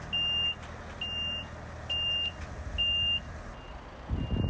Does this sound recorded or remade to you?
recorded